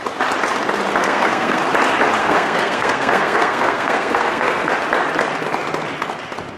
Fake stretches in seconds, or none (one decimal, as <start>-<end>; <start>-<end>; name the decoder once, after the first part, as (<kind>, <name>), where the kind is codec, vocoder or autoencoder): 1.0-1.6 (codec, SNAC); 2.2-4.7